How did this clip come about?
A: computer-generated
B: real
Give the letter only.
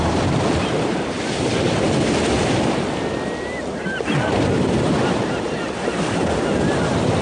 B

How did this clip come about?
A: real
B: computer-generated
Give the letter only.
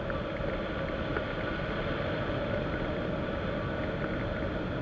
A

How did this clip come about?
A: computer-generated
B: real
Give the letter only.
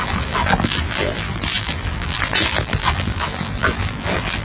A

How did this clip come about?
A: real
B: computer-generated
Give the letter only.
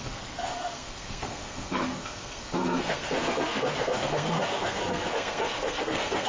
B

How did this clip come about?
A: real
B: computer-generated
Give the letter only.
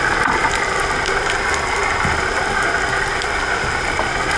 A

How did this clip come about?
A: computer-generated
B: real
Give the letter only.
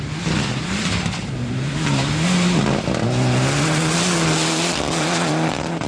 B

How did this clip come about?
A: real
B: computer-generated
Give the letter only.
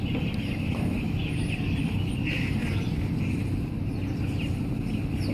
A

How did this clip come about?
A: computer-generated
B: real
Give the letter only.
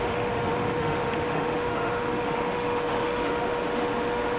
A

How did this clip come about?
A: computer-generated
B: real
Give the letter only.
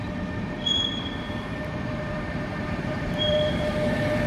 A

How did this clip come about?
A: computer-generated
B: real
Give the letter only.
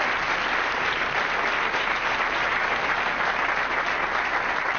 B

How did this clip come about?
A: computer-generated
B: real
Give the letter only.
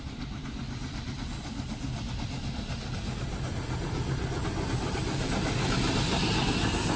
B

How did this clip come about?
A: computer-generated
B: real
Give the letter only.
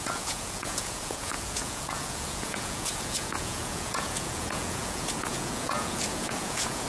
A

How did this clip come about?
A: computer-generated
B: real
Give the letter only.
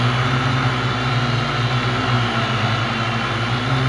B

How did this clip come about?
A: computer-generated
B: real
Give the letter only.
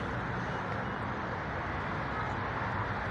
B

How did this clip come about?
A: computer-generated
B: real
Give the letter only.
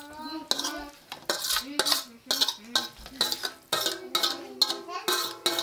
B